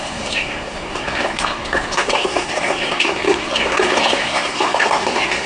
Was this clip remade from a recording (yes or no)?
yes